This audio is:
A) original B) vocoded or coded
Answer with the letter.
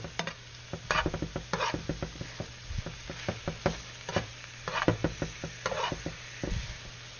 A